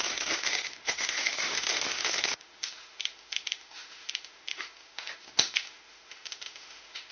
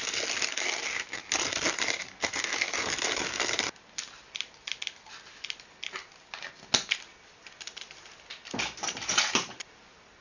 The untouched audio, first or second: second